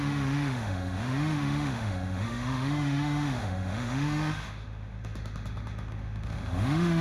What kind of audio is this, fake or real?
fake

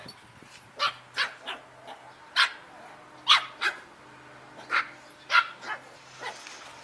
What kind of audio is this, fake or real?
real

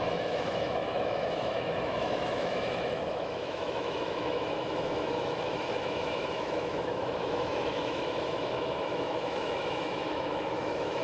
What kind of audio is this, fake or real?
fake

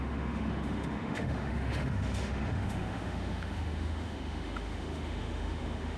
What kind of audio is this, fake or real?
fake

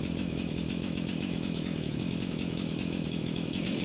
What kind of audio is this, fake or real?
fake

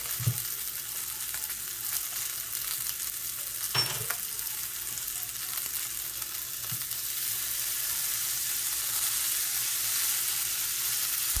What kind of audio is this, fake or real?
real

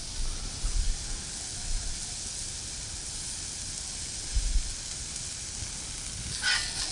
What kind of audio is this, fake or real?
real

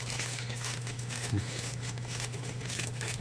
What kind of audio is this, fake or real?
fake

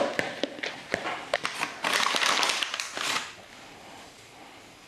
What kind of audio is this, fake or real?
real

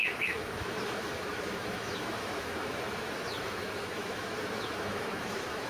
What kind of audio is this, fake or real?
fake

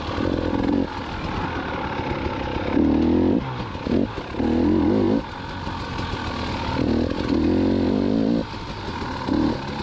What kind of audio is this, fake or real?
real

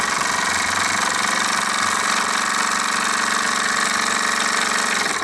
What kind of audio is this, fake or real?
real